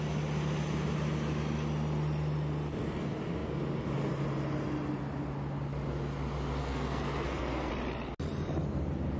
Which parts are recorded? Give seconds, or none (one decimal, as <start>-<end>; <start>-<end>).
0.0-6.6; 7.7-9.2